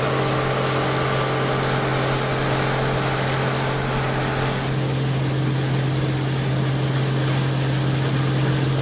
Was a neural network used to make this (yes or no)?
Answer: no